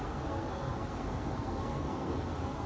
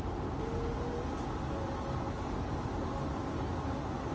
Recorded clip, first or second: second